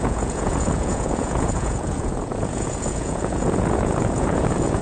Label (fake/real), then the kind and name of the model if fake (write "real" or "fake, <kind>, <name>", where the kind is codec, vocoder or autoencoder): fake, vocoder, Vocos